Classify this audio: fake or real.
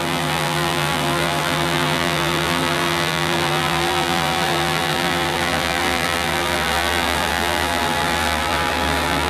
fake